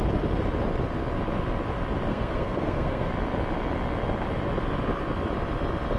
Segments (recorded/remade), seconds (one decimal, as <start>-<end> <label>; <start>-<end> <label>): 0.0-2.1 recorded; 2.1-3.1 remade; 3.1-6.0 recorded